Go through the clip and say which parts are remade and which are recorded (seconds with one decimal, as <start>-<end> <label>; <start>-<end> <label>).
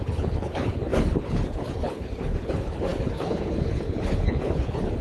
0.0-5.0 remade